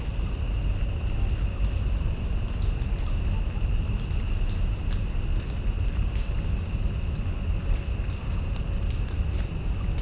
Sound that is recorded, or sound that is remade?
recorded